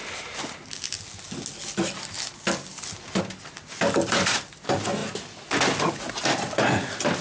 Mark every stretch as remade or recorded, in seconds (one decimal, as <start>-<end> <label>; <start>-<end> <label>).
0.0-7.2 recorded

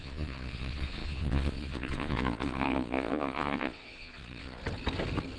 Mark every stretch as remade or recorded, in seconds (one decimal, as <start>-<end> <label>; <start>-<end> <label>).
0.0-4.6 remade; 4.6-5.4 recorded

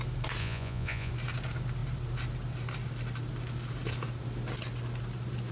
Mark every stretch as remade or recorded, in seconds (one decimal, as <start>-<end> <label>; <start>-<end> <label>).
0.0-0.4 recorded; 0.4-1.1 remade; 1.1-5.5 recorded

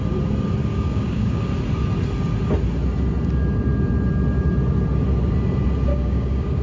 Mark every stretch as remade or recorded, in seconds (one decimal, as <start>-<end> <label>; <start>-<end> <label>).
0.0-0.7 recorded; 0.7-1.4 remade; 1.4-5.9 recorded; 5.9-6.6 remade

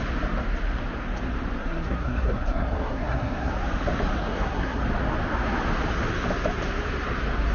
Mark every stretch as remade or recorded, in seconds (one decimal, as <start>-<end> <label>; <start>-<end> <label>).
0.0-1.6 recorded; 1.6-3.5 remade; 3.5-4.2 recorded; 4.2-4.8 remade; 4.8-7.5 recorded